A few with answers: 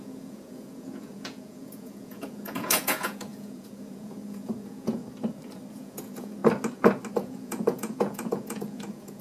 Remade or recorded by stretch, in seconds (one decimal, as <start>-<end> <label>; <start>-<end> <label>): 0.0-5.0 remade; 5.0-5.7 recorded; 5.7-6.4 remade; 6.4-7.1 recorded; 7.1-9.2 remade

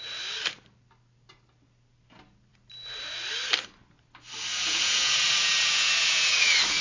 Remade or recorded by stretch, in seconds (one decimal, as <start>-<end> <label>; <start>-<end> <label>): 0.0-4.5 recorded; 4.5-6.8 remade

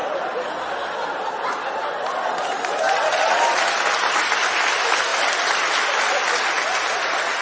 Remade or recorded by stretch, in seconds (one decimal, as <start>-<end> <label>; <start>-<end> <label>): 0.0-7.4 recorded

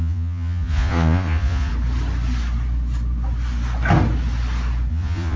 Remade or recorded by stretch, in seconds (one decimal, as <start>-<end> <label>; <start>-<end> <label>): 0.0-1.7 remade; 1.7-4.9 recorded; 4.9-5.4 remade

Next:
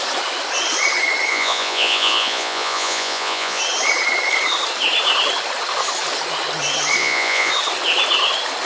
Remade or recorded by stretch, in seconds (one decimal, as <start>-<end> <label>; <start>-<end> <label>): 0.0-1.3 recorded; 1.3-3.6 remade; 3.6-7.0 recorded; 7.0-7.5 remade; 7.5-8.7 recorded